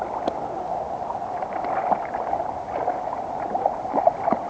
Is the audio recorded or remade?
recorded